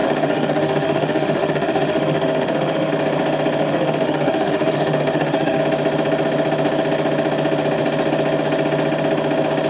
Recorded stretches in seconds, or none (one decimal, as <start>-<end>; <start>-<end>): 2.9-3.6; 5.6-9.7